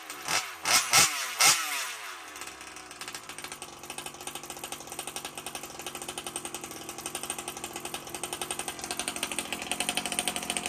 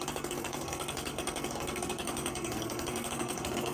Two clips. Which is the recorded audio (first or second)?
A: first